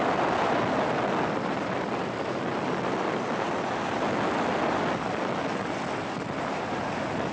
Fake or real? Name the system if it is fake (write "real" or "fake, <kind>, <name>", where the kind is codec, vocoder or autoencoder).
real